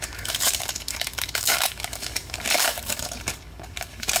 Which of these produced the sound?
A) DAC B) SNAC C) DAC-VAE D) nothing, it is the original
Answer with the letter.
A